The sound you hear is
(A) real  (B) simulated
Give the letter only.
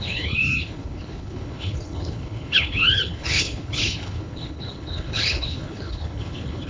B